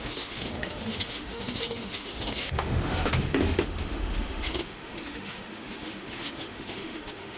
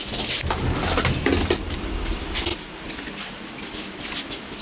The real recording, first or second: second